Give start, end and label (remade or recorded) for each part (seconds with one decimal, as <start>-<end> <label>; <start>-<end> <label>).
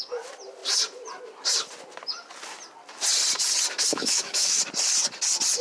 0.0-3.9 recorded; 3.9-4.6 remade; 4.6-5.6 recorded